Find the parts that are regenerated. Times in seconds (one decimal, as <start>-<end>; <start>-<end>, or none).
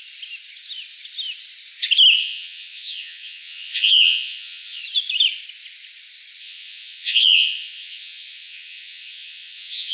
2.2-4.8; 6.4-9.9